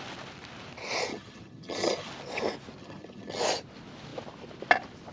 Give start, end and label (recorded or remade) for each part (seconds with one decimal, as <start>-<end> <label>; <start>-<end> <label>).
0.0-1.1 recorded; 1.1-2.1 remade; 2.1-2.8 recorded; 2.8-3.4 remade; 3.4-5.1 recorded